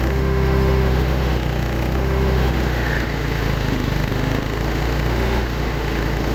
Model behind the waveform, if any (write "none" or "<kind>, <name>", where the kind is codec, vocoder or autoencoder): autoencoder, DAC-VAE